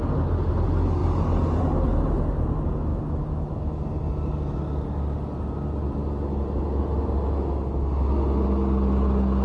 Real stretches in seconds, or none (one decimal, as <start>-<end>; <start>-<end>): 0.0-2.9; 3.8-9.4